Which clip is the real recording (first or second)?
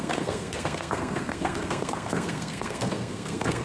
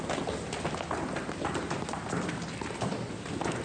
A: second